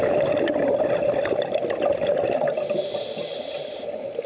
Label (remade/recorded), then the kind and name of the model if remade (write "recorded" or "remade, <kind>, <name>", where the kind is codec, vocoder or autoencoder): recorded